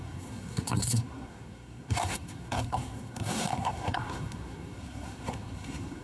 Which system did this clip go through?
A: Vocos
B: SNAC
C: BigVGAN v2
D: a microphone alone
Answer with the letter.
B